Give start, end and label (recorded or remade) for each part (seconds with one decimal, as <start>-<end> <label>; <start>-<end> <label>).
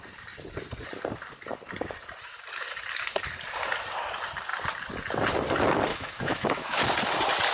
0.0-5.9 recorded; 5.9-6.8 remade; 6.8-7.5 recorded